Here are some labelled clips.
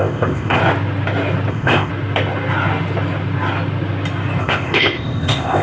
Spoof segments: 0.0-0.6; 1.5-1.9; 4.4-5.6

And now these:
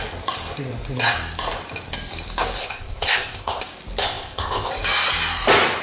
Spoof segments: 2.6-3.6; 4.0-4.7

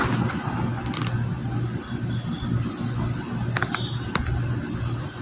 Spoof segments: none

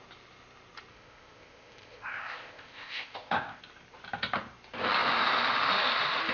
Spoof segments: 0.9-3.6

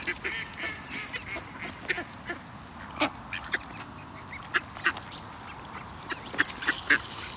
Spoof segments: 3.8-4.3

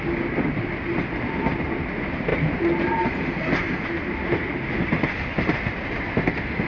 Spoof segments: none

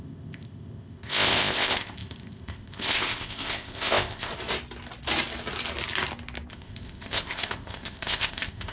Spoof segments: 0.0-4.3; 6.5-8.7

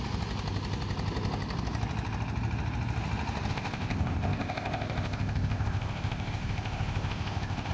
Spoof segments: 3.5-7.7